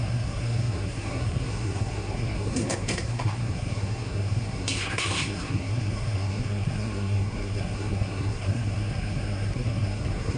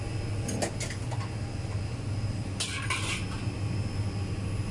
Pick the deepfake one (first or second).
first